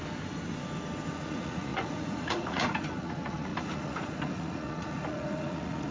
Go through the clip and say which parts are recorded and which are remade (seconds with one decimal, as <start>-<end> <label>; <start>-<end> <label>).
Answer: 0.0-1.1 recorded; 1.1-5.9 remade